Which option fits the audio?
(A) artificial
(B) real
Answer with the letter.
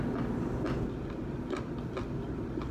B